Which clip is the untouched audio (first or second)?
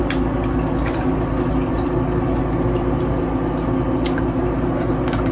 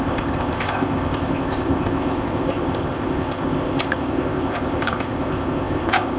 first